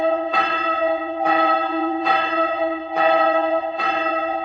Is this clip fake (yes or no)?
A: yes